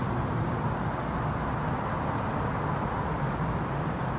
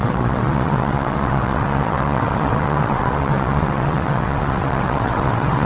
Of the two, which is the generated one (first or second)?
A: second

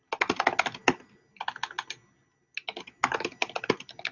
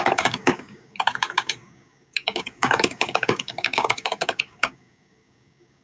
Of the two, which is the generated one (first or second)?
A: second